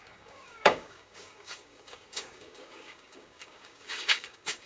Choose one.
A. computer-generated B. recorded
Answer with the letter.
A